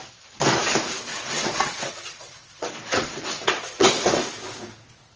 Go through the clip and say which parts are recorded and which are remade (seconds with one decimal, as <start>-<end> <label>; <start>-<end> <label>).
0.0-1.1 recorded; 1.1-4.2 remade; 4.2-5.2 recorded